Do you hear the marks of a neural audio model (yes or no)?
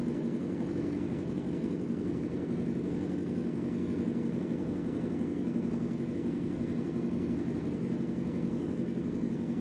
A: yes